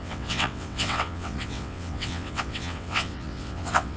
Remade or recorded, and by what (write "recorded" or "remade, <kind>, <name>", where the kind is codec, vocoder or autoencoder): remade, vocoder, WaveNeXt